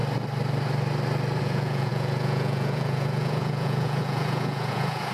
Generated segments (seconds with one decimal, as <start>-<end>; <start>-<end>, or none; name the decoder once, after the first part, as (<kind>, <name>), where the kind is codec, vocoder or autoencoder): 1.4-5.1 (vocoder, Vocos)